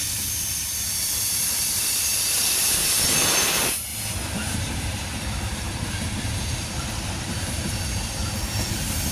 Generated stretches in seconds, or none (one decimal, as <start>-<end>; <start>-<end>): 3.9-8.7